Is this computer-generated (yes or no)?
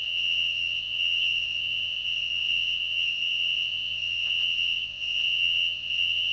yes